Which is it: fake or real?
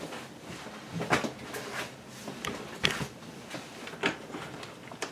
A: fake